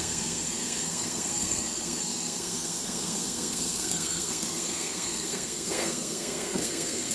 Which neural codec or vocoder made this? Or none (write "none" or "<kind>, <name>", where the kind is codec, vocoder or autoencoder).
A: codec, SNAC